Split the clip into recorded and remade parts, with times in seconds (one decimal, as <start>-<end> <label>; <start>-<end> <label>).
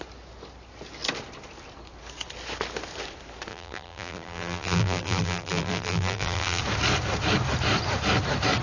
0.0-3.5 recorded; 3.5-6.6 remade; 6.6-8.6 recorded